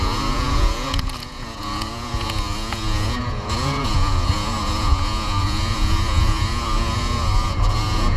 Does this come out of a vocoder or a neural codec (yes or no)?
yes